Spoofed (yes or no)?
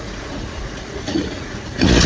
yes